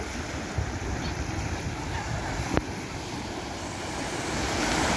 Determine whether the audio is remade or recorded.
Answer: recorded